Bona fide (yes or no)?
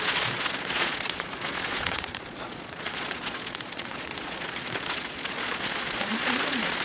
no